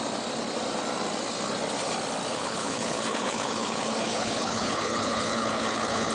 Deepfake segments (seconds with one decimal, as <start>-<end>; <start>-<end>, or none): 2.3-6.1